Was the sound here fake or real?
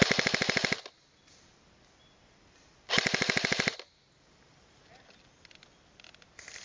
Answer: real